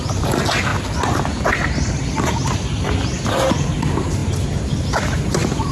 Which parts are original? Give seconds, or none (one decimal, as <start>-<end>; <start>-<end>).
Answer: 0.0-5.7